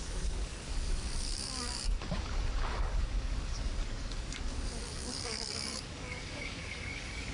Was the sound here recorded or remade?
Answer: remade